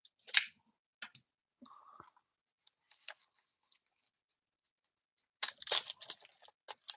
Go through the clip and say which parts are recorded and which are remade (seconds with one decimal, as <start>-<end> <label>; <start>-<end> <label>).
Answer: 0.0-7.0 recorded